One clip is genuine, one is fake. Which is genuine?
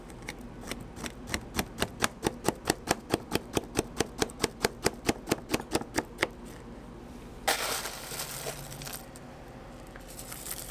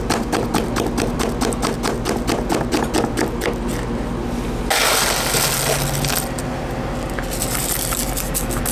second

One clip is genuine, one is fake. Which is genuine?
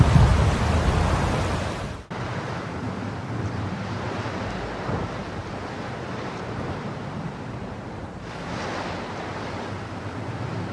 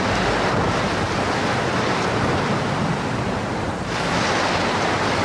second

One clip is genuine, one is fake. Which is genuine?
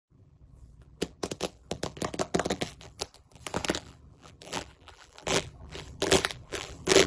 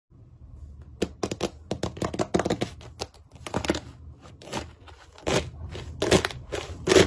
second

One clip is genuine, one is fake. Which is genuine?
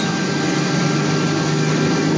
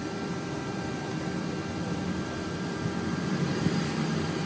first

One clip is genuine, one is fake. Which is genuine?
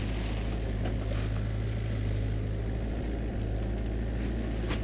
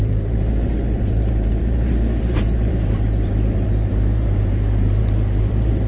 first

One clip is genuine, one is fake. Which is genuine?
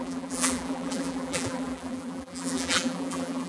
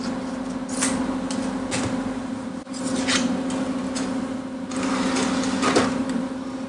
second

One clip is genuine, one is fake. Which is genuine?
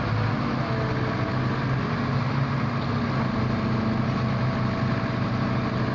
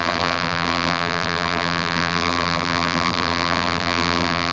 first